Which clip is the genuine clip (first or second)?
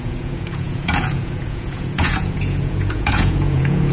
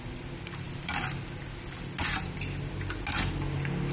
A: second